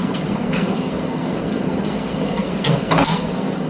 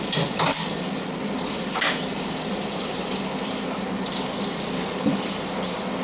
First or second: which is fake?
first